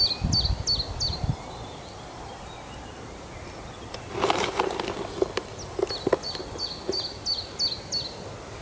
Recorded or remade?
recorded